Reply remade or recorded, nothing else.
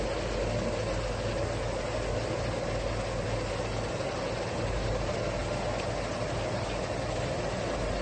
recorded